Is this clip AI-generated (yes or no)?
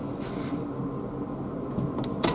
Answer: no